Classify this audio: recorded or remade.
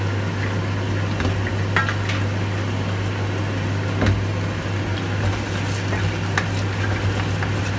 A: recorded